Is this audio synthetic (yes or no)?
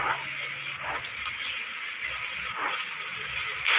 no